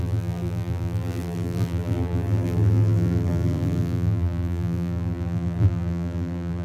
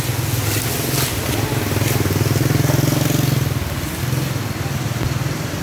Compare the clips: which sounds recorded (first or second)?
second